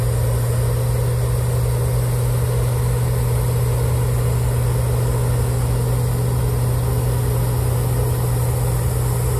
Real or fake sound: real